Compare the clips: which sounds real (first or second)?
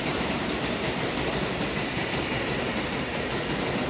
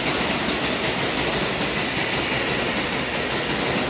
second